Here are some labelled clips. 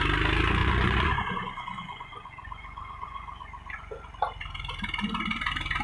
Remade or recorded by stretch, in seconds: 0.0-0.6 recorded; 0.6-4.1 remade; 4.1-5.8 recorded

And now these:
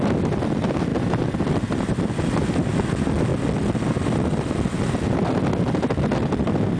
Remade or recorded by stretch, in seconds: 0.0-6.8 recorded

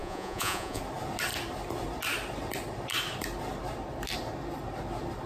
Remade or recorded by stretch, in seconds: 0.0-0.8 remade; 0.8-5.3 recorded